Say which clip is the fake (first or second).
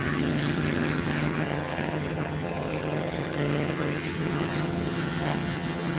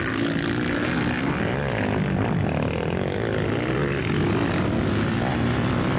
first